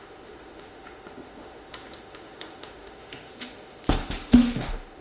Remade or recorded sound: remade